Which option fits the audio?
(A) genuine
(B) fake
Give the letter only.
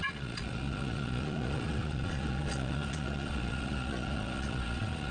B